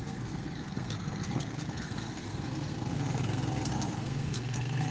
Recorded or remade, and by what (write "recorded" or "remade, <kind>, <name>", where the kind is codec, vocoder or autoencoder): remade, codec, SNAC